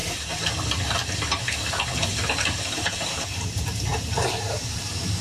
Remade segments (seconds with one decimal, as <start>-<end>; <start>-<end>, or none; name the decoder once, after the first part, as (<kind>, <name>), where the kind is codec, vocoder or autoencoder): 3.1-5.2 (vocoder, BigVGAN v2)